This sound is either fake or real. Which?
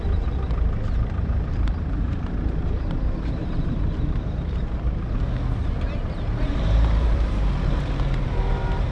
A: fake